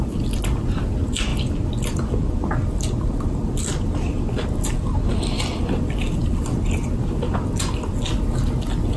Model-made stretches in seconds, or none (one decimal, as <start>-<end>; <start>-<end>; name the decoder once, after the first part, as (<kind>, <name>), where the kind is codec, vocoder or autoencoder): none